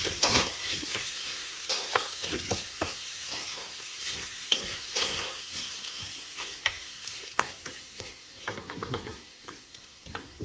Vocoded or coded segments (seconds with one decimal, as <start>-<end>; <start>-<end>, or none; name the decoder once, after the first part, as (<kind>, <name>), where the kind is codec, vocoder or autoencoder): 0.0-10.4 (codec, SNAC)